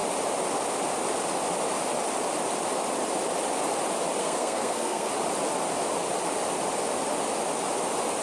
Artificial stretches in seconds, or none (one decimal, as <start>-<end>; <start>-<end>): 4.2-5.1